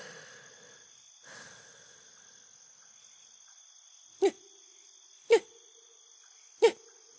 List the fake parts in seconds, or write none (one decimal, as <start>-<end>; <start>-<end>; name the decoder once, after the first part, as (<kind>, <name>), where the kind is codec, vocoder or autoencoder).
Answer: none